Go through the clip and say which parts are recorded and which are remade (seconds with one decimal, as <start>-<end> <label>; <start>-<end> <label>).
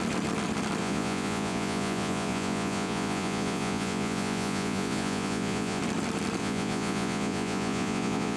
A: 0.0-0.8 recorded; 0.8-5.8 remade; 5.8-6.4 recorded; 6.4-8.4 remade